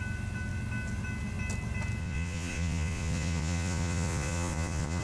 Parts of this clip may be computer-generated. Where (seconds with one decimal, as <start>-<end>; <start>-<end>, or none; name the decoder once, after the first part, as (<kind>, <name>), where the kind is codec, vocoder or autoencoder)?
2.0-5.0 (vocoder, Vocos)